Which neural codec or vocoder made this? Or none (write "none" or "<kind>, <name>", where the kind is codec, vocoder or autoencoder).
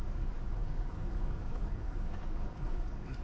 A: codec, DAC